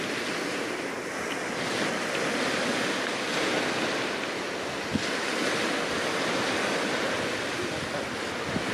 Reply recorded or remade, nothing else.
recorded